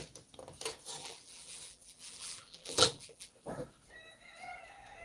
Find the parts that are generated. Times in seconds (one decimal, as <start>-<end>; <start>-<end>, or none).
1.0-3.3